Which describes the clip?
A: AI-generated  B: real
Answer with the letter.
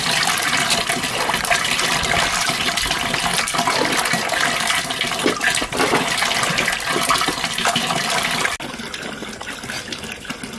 B